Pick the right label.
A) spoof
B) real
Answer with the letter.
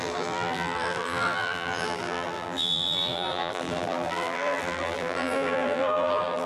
A